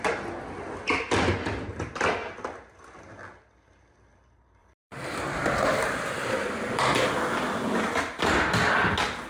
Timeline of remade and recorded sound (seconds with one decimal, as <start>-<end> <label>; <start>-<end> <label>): 0.0-4.6 recorded; 4.6-5.2 remade; 5.2-9.3 recorded